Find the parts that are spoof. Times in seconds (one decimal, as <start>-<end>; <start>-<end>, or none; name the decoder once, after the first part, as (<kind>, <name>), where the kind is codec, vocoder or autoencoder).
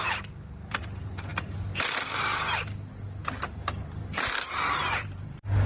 0.0-1.3 (vocoder, BigVGAN v2); 3.8-5.7